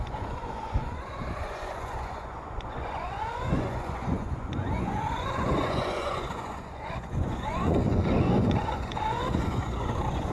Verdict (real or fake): fake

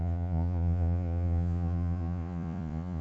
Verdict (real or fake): fake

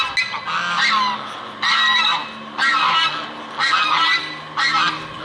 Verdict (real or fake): real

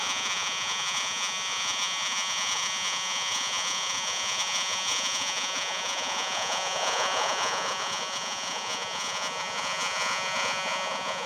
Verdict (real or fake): fake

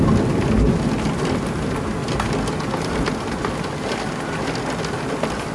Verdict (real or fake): real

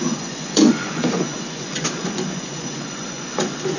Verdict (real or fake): fake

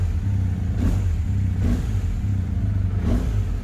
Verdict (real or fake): real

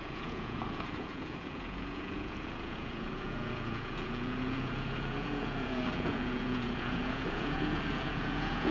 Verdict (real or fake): fake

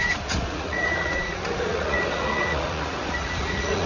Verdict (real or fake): fake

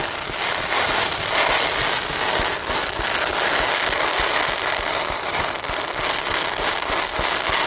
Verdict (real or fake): real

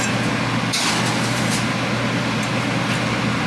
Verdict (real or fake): real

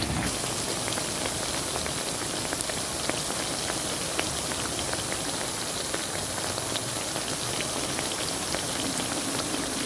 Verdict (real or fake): real